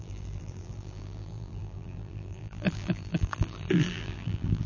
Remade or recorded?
remade